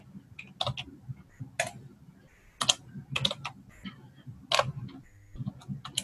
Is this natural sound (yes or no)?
yes